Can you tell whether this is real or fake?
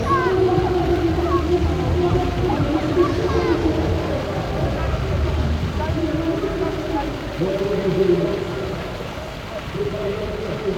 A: real